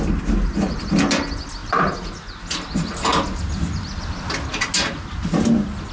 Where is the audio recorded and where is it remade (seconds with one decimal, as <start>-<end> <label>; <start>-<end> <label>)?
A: 0.0-5.9 recorded